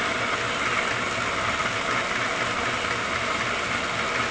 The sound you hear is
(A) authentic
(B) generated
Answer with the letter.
A